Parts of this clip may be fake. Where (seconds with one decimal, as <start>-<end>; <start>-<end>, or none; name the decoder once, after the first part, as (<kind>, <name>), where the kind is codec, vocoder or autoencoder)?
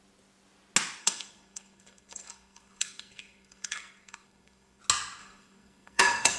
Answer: 1.0-4.8 (codec, SNAC); 5.2-6.4